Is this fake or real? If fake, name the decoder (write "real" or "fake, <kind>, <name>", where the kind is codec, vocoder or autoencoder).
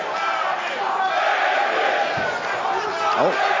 real